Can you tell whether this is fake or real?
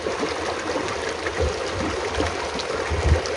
real